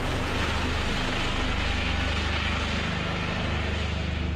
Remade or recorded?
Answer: recorded